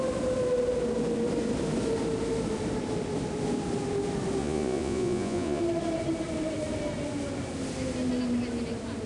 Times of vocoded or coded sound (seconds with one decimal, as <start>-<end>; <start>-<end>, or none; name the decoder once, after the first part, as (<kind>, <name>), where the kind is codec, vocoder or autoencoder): 4.4-5.6 (vocoder, Vocos)